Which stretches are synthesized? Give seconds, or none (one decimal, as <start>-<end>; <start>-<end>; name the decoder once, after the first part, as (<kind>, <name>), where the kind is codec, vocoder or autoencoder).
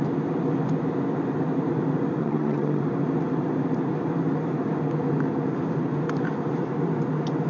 2.2-2.8 (vocoder, HiFi-GAN)